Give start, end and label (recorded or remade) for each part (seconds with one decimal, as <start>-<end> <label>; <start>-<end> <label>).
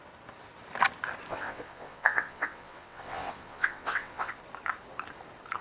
0.0-1.3 recorded; 1.3-4.3 remade; 4.3-5.6 recorded